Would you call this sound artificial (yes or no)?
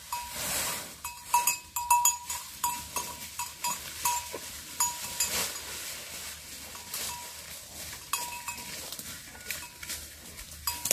no